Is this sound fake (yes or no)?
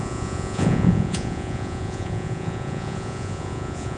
yes